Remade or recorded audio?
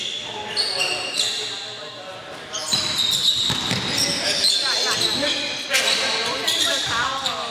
recorded